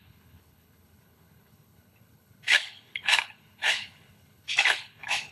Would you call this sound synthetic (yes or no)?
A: yes